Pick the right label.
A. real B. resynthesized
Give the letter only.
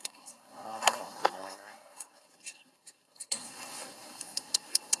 B